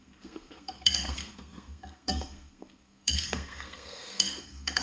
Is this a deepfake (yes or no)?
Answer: yes